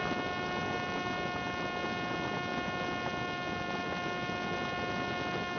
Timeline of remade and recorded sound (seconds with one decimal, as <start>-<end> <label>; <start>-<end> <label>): 0.0-5.6 recorded